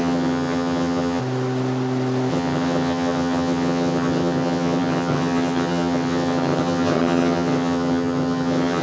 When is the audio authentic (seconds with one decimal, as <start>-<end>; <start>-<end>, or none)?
1.2-2.3